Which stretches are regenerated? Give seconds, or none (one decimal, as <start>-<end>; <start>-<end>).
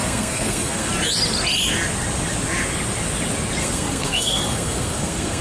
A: 0.0-0.9; 3.6-5.4